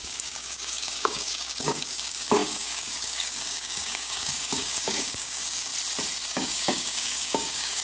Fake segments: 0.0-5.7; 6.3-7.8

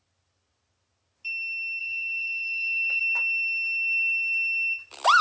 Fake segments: 1.8-3.0

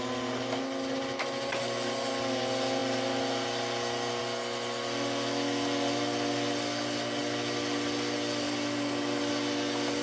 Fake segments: none

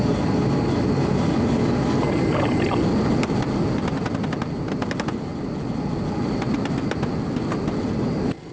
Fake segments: none

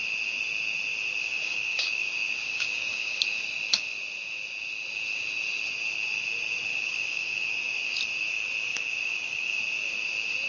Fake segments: 1.2-3.2; 6.7-8.0; 8.7-9.6

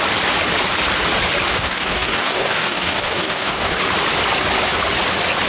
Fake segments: 1.5-3.8

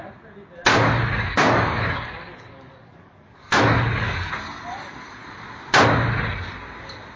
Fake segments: 0.7-4.3

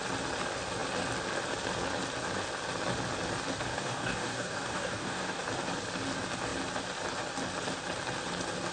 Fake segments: 3.7-5.4